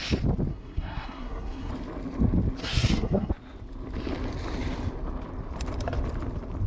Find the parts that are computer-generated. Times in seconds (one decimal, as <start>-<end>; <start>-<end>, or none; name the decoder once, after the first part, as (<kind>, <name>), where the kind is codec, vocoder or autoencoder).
0.5-1.7 (codec, SNAC); 2.6-3.3